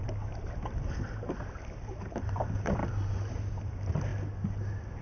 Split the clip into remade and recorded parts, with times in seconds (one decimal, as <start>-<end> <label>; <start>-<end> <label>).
0.0-4.1 remade; 4.1-5.0 recorded